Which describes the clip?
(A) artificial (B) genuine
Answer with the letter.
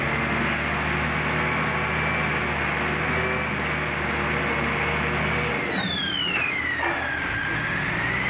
B